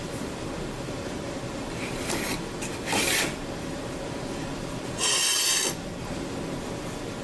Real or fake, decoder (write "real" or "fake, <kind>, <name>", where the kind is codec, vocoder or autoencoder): fake, vocoder, BigVGAN v2